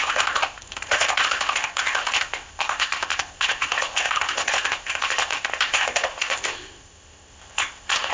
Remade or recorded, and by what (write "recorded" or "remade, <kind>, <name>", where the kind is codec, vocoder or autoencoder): remade, codec, ZipCodec